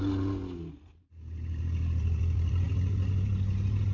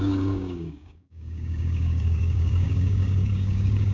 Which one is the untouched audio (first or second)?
first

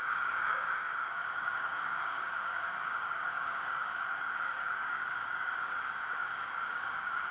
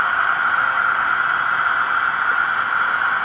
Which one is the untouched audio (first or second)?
second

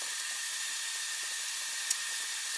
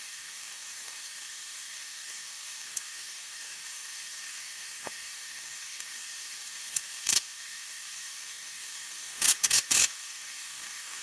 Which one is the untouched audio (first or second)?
first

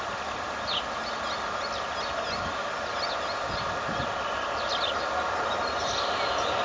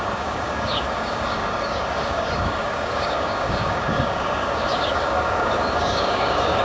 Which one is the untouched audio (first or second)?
first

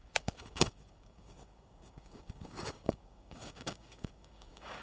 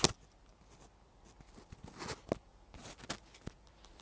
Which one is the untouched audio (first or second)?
second